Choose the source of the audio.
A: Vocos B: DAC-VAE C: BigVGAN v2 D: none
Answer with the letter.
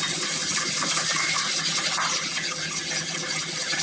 D